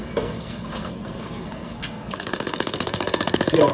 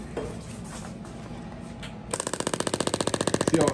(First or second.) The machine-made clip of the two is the first